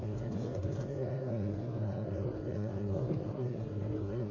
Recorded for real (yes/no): no